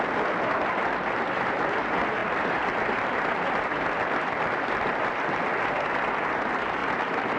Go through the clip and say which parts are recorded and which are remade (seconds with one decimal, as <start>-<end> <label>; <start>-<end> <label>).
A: 0.0-7.4 recorded